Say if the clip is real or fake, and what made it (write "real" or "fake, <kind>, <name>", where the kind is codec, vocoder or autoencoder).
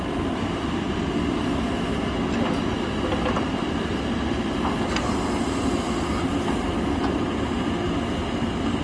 real